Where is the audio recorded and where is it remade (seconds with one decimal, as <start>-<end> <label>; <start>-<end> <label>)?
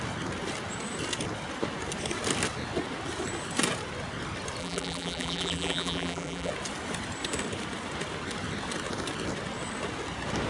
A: 0.0-4.6 recorded; 4.6-6.5 remade; 6.5-10.5 recorded